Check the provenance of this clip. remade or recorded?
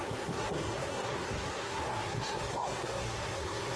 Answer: remade